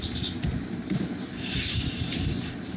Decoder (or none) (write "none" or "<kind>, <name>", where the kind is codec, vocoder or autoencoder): vocoder, BigVGAN v2